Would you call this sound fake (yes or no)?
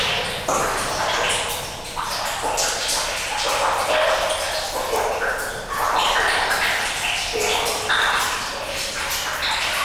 no